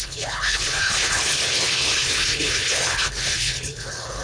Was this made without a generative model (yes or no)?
no